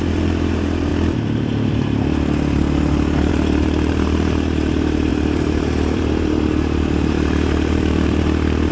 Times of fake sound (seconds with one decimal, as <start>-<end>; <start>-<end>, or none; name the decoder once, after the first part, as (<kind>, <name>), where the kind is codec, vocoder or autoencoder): 0.0-0.9 (vocoder, BigVGAN v2); 3.3-8.7

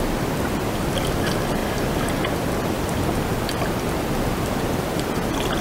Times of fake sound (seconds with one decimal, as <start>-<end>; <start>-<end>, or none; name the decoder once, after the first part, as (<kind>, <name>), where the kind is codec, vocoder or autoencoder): none

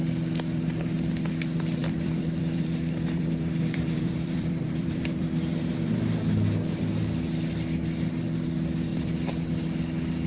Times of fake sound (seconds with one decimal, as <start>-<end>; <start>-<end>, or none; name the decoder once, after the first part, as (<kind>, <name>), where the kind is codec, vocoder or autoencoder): 1.8-5.6 (vocoder, BigVGAN v2); 8.9-9.5

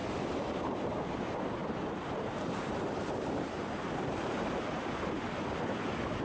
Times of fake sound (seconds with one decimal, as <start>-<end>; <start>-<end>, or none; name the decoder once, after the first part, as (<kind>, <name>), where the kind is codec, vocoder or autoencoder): 0.0-1.1 (vocoder, BigVGAN v2); 1.6-5.3

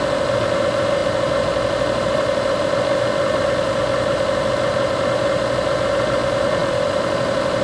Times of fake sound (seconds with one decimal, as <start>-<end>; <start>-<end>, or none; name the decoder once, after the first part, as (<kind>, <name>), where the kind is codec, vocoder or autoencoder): 1.0-2.6 (vocoder, BigVGAN v2)